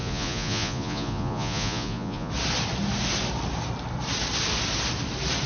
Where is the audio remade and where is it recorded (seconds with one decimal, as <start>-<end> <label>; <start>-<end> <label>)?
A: 0.0-2.3 remade; 2.3-5.5 recorded